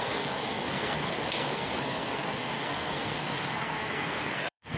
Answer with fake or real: fake